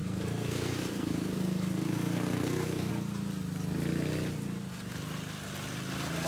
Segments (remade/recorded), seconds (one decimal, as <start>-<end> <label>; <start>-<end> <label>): 0.0-2.9 remade; 2.9-6.3 recorded